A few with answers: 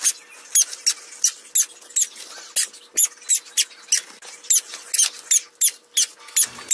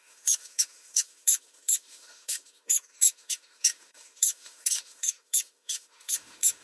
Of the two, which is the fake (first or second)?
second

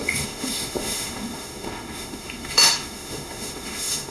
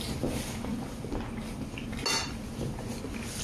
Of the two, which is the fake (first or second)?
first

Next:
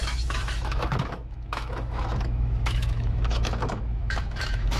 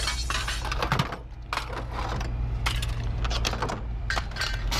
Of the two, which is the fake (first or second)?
first